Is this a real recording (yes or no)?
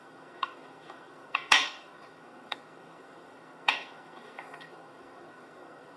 no